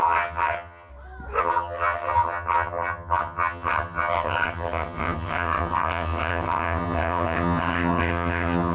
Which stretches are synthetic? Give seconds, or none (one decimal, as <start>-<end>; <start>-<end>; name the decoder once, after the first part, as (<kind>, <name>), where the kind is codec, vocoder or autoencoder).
0.0-0.9 (vocoder, HiFi-GAN); 1.4-8.7